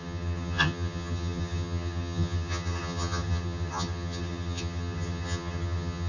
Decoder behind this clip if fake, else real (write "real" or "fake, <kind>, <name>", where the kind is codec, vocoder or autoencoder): fake, vocoder, HiFi-GAN